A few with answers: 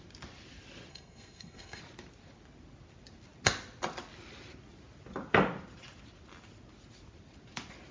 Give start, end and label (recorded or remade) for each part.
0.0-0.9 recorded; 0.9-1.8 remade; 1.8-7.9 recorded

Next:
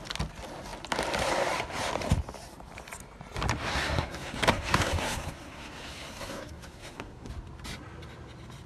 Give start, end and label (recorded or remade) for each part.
0.0-3.7 recorded; 3.7-7.3 remade; 7.3-8.7 recorded

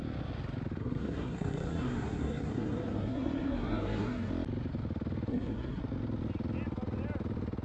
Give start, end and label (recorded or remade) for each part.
0.0-0.8 recorded; 0.8-4.3 remade; 4.3-5.3 recorded; 5.3-5.8 remade; 5.8-7.6 recorded

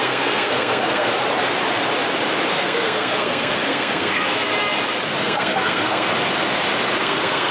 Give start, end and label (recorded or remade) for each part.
0.0-1.1 remade; 1.1-2.5 recorded; 2.5-4.5 remade; 4.5-5.2 recorded; 5.2-6.1 remade; 6.1-7.0 recorded; 7.0-7.5 remade

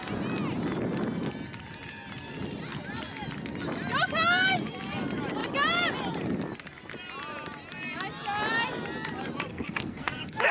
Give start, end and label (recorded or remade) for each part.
0.0-9.5 recorded; 9.5-10.5 remade

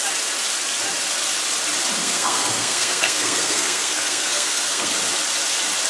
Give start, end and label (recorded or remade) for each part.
0.0-2.0 recorded; 2.0-4.9 remade; 4.9-5.9 recorded

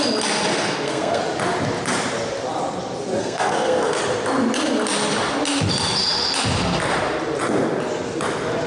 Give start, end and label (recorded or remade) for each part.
0.0-0.5 recorded; 0.5-1.2 remade; 1.2-3.2 recorded; 3.2-4.0 remade; 4.0-8.7 recorded